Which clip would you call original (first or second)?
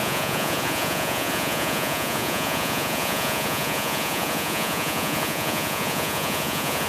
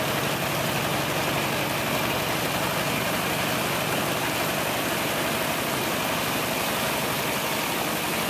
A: second